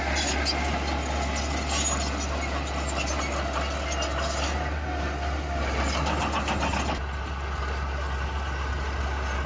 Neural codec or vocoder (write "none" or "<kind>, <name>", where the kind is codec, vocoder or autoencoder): none